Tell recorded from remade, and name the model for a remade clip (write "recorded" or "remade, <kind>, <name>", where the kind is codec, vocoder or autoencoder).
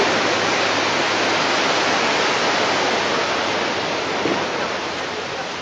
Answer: recorded